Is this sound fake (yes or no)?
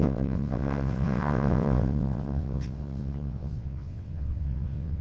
yes